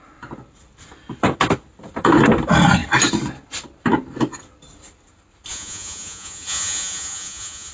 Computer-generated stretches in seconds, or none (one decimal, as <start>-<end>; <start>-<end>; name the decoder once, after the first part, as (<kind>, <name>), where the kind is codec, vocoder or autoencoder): 5.5-7.7 (vocoder, Vocos)